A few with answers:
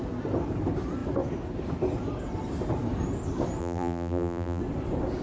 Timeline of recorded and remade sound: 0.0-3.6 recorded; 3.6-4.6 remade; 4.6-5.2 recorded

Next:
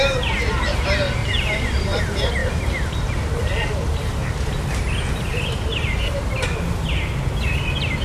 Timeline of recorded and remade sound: 0.0-1.2 recorded; 1.2-2.0 remade; 2.0-2.4 recorded; 2.4-6.2 remade; 6.2-8.0 recorded

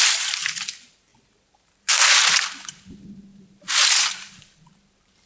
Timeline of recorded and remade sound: 0.0-5.3 remade

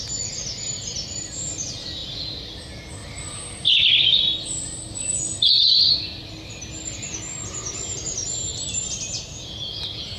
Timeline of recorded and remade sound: 0.0-10.2 recorded